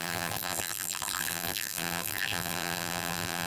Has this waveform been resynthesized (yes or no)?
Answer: yes